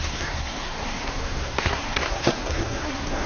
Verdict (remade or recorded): remade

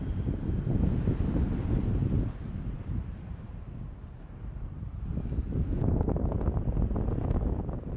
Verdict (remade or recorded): recorded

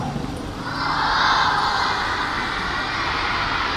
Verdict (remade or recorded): recorded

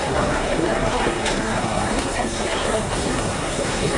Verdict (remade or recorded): remade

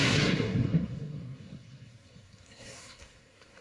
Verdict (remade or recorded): remade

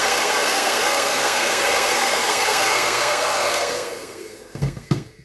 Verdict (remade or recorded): remade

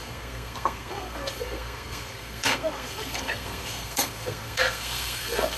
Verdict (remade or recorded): remade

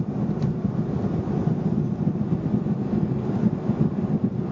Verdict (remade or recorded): recorded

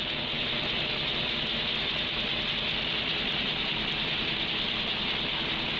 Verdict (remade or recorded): recorded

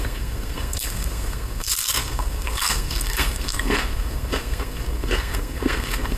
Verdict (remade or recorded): remade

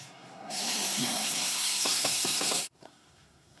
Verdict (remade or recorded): remade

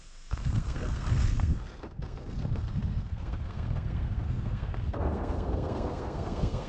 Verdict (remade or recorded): remade